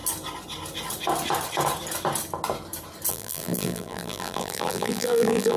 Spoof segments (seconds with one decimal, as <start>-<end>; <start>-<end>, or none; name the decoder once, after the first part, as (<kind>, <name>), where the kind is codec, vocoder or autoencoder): 3.1-5.6 (vocoder, BigVGAN v2)